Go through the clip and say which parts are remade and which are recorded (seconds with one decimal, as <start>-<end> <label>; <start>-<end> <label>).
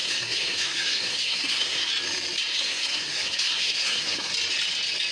0.0-1.9 remade; 1.9-2.5 recorded; 2.5-4.3 remade; 4.3-5.1 recorded